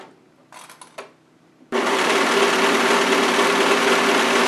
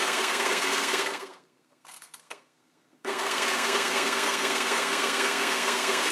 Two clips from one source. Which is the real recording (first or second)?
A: first